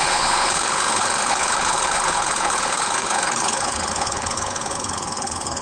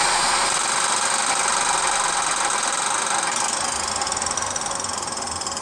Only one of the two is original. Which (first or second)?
second